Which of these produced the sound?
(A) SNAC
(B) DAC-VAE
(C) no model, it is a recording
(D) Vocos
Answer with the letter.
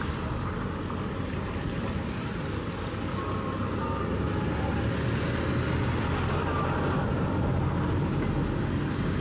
C